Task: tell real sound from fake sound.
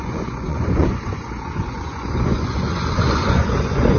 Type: fake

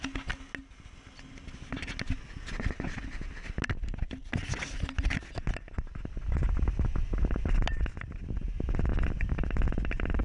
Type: real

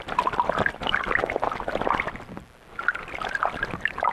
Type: real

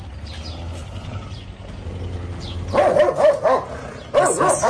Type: real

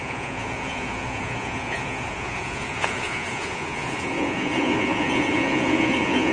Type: fake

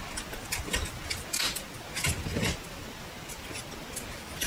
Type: real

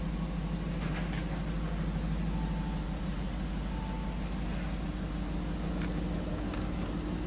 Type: real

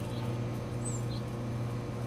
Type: real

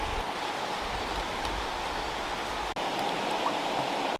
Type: real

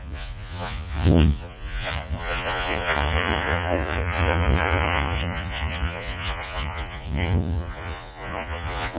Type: fake